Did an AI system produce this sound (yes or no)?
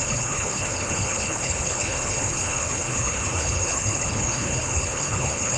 yes